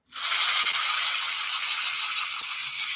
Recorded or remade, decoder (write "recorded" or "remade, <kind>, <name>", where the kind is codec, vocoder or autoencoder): recorded